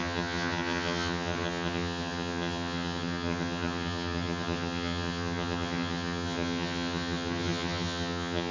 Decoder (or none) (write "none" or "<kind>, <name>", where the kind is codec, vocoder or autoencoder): vocoder, HiFi-GAN